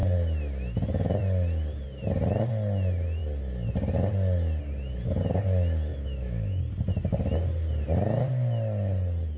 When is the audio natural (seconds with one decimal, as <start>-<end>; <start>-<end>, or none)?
0.0-5.9; 6.6-9.4